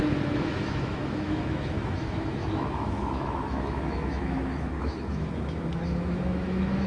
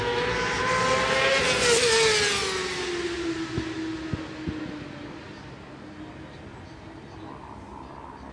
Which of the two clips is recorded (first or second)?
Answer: second